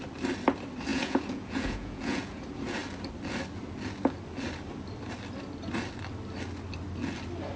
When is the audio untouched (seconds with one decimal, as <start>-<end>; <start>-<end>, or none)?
0.0-0.9; 2.4-7.6